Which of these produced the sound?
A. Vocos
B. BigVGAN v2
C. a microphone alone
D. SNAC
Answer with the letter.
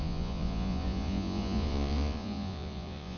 A